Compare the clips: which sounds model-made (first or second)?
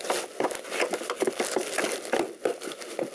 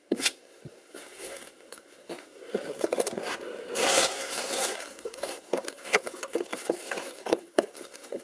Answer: second